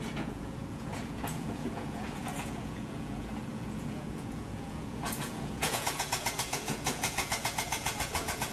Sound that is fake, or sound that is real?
fake